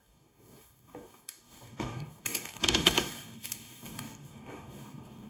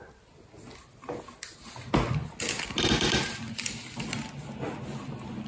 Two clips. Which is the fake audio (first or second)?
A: first